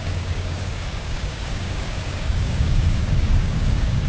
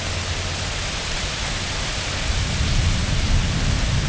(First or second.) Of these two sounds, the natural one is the second